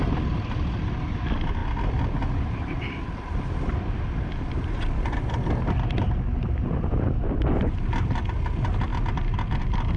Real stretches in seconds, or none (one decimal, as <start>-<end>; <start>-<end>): 0.0-10.0